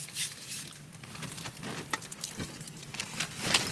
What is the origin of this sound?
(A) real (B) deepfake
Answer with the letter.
A